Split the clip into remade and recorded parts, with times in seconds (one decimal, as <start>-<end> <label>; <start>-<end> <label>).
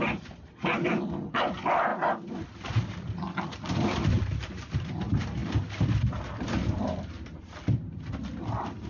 0.0-8.9 remade